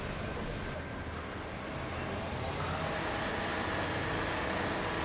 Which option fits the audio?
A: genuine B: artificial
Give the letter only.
A